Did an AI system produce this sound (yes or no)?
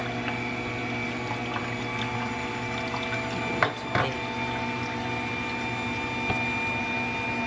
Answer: no